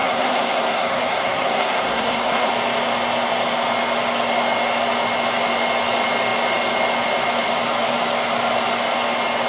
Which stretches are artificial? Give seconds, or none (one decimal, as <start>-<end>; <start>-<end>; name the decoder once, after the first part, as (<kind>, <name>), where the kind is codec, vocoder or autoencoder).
0.0-2.5 (codec, SNAC)